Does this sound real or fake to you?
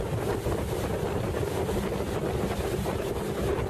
real